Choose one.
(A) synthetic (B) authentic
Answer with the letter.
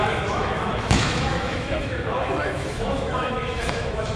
A